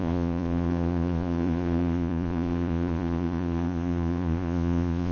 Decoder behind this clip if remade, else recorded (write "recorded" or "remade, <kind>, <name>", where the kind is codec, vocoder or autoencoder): remade, vocoder, Vocos